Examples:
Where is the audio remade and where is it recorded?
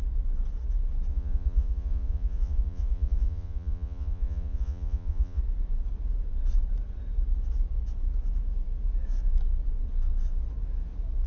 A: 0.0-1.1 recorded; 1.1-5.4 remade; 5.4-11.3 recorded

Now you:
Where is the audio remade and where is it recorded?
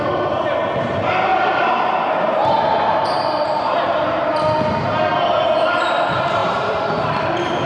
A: 0.0-1.3 recorded; 1.3-5.9 remade; 5.9-6.4 recorded; 6.4-7.1 remade; 7.1-7.7 recorded